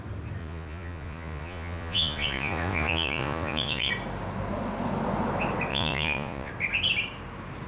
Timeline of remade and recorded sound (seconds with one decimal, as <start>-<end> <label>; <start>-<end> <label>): 0.0-0.4 recorded; 0.4-3.9 remade; 3.9-5.7 recorded; 5.7-6.5 remade; 6.5-7.7 recorded